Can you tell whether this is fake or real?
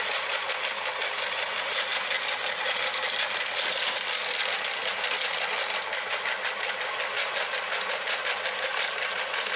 real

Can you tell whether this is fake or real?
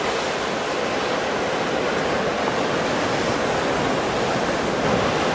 real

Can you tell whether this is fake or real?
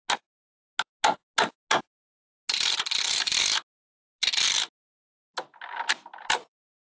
real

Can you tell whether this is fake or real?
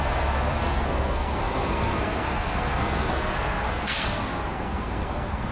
fake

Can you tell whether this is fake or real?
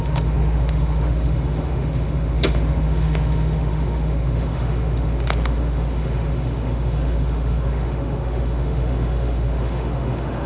fake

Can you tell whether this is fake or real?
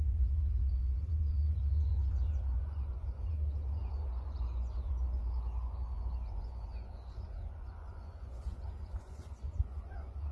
fake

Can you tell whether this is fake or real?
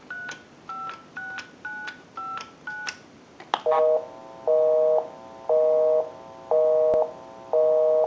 real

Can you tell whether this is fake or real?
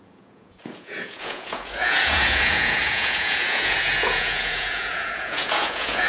fake